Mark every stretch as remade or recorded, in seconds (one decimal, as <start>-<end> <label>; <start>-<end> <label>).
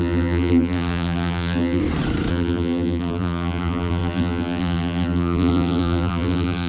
0.0-1.8 remade; 1.8-2.3 recorded; 2.3-6.7 remade